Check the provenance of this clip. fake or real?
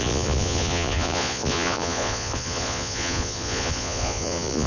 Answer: fake